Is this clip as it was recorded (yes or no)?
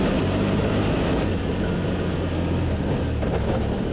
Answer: yes